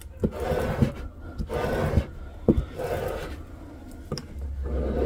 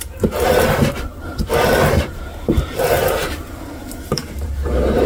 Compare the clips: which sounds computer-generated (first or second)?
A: second